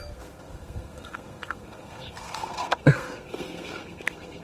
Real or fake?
fake